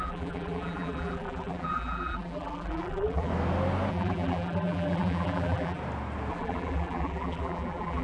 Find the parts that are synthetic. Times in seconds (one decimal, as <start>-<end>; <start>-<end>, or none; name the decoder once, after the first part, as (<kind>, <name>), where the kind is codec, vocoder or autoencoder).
0.0-3.3 (vocoder, BigVGAN v2); 3.9-5.8; 6.3-8.0